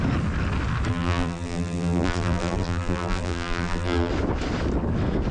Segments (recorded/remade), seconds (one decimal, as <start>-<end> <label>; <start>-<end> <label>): 0.0-0.9 recorded; 0.9-4.1 remade; 4.1-5.3 recorded